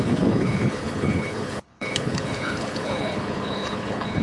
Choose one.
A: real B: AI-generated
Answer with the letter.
B